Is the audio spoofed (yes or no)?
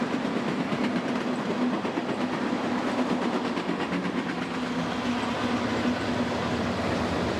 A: no